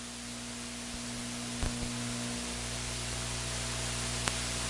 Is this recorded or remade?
recorded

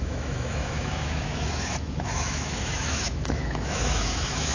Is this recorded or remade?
remade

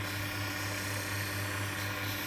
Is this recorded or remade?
recorded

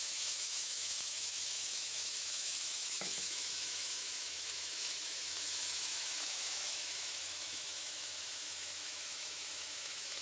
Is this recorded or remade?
remade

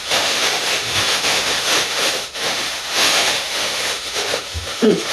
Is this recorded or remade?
remade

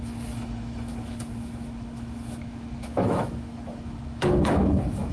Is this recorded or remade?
remade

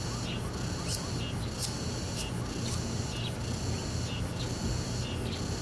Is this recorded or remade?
recorded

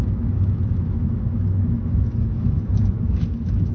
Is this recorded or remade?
remade